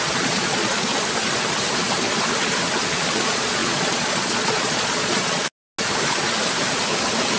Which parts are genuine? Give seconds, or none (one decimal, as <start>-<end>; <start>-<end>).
0.9-2.9; 5.5-7.4